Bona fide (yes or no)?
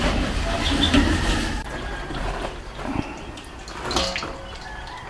yes